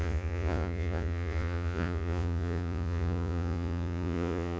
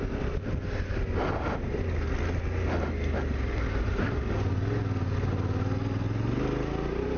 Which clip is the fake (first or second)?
first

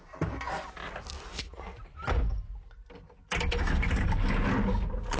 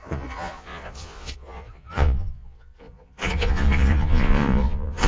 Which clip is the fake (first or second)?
second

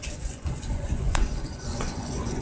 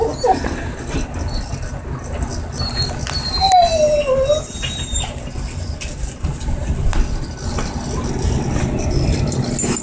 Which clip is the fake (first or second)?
first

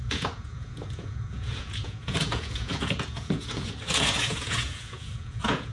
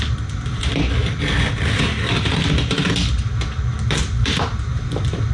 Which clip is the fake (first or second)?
first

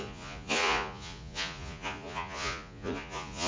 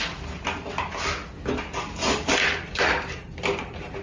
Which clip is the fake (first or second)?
first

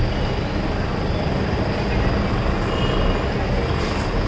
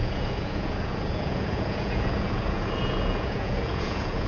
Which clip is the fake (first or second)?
second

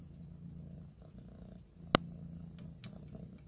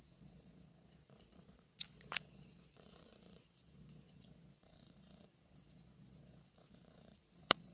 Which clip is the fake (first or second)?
second